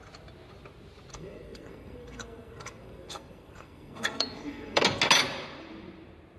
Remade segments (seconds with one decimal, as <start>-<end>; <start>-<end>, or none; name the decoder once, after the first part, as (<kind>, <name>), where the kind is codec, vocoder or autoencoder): 1.1-4.8 (codec, SNAC)